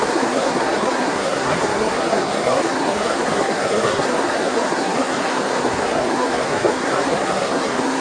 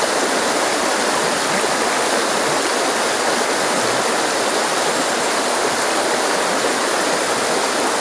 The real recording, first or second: second